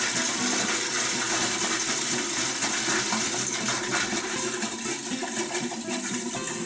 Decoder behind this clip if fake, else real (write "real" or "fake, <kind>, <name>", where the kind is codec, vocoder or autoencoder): real